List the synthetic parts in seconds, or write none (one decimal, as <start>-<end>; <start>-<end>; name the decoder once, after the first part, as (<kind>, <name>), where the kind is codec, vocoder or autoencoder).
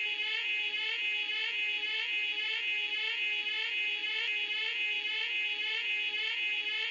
none